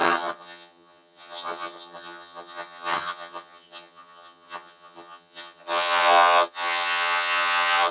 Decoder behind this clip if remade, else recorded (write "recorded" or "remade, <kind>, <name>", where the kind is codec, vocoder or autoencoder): remade, vocoder, HiFi-GAN